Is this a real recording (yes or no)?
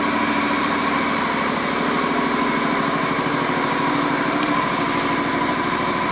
no